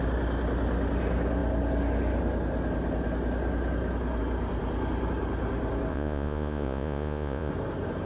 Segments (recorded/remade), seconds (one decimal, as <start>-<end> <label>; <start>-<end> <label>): 0.0-5.9 recorded; 5.9-7.5 remade; 7.5-8.1 recorded